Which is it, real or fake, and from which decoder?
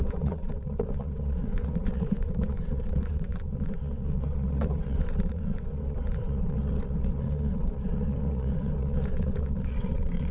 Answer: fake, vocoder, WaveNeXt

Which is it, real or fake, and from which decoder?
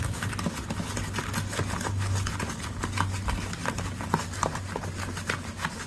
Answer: real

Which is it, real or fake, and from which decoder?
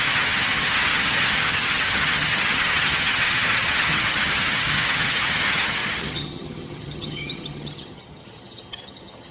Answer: fake, vocoder, HiFi-GAN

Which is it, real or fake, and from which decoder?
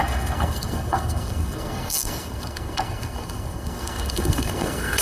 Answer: fake, codec, SNAC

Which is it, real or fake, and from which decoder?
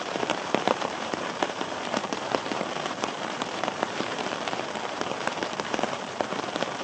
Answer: fake, vocoder, BigVGAN v2